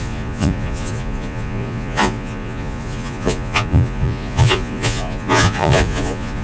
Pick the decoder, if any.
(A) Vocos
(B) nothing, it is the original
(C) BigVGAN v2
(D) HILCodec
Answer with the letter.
A